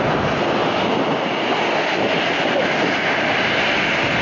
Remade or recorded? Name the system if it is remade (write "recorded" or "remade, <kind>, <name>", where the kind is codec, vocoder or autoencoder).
recorded